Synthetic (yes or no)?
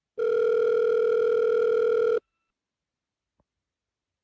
no